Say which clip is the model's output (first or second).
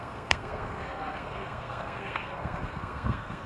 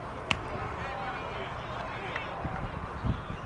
first